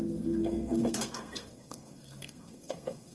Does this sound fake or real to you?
fake